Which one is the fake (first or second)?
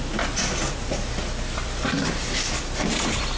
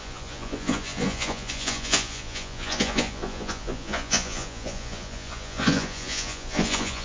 second